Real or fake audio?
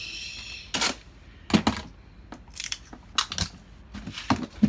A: real